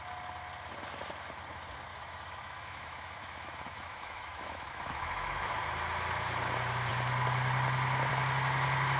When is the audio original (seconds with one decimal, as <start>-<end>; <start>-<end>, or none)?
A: 0.0-1.9; 5.5-9.0